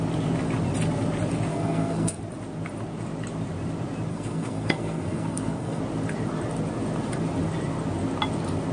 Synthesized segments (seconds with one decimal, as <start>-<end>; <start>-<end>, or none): 1.5-2.2; 4.1-5.8